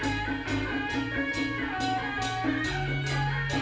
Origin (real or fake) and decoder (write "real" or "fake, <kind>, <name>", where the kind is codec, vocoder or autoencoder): real